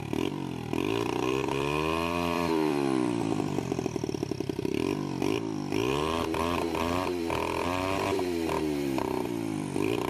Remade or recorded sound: remade